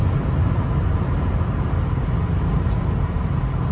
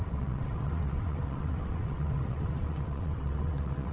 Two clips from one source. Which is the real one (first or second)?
first